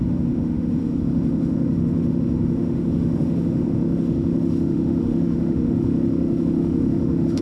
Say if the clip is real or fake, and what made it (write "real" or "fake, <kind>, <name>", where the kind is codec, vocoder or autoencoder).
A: fake, autoencoder, DAC-VAE